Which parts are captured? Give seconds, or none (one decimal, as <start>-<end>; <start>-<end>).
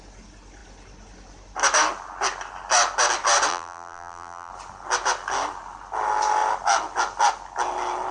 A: 0.0-3.5; 4.5-8.1